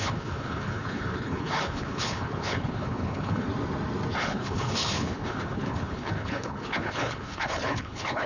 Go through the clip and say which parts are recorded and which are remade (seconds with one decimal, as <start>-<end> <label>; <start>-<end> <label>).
0.0-3.5 remade; 3.5-4.2 recorded; 4.2-8.3 remade